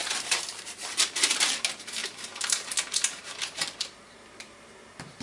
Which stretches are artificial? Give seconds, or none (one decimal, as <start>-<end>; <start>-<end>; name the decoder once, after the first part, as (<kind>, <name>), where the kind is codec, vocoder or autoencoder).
0.0-1.6 (vocoder, BigVGAN v2); 2.0-5.2